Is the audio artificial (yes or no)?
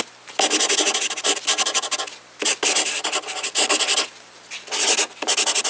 no